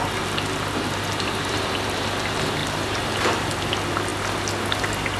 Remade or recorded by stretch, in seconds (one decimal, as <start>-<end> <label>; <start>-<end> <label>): 0.0-2.6 recorded; 2.6-3.5 remade; 3.5-5.2 recorded